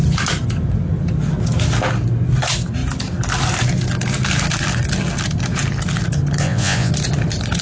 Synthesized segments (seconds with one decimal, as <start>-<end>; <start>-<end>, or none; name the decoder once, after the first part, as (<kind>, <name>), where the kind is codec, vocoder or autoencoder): 6.4-6.9 (vocoder, Vocos)

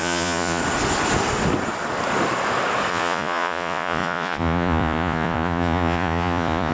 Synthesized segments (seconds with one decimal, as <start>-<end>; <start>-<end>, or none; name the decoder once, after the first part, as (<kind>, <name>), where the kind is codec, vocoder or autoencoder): 0.0-0.6 (vocoder, Vocos); 2.9-6.7

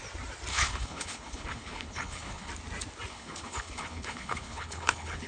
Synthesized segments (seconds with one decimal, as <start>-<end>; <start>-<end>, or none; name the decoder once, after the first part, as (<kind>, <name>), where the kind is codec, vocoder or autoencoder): 0.5-2.5 (codec, HILCodec); 3.1-5.3